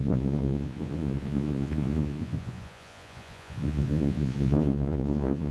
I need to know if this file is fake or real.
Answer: fake